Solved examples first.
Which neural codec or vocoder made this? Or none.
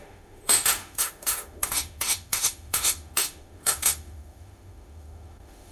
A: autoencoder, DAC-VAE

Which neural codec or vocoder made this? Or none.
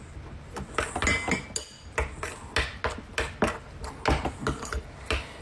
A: none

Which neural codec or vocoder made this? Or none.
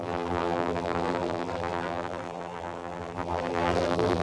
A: vocoder, BigVGAN v2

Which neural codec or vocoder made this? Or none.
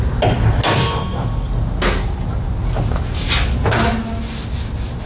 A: none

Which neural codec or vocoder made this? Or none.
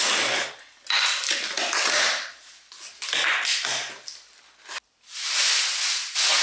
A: none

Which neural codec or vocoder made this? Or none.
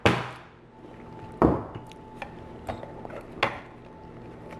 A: none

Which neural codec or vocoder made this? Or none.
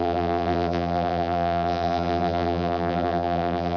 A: vocoder, BigVGAN v2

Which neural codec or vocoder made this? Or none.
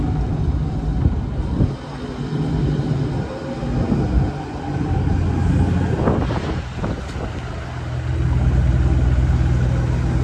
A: none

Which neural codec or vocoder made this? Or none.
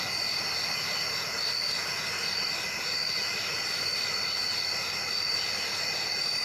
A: none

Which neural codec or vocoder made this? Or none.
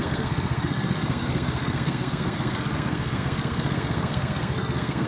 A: codec, SNAC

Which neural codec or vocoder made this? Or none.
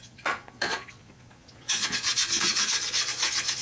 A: vocoder, Vocos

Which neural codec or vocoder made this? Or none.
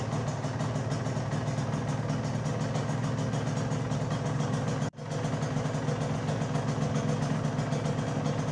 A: none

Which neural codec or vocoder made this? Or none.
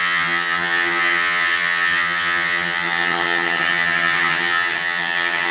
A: vocoder, HiFi-GAN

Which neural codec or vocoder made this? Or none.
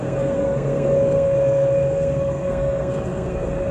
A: codec, SNAC